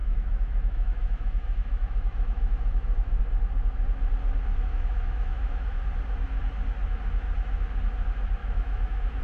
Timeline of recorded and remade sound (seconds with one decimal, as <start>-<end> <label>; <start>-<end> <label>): 0.0-3.2 remade; 3.2-4.7 recorded; 4.7-5.8 remade; 5.8-8.4 recorded; 8.4-9.2 remade